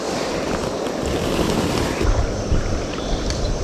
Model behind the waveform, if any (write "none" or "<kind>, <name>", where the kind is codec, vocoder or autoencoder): vocoder, BigVGAN v2